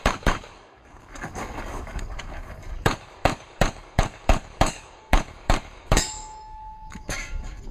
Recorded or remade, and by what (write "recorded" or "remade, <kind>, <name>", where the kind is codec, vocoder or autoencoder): remade, codec, DAC